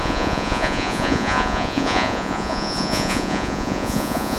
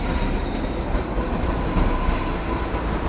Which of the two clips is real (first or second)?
second